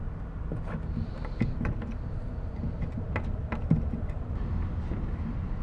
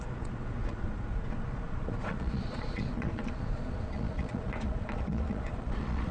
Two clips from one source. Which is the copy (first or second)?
second